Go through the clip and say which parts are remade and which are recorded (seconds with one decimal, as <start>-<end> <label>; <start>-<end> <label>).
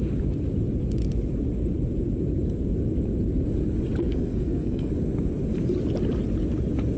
0.0-4.0 recorded; 4.0-4.9 remade; 4.9-7.0 recorded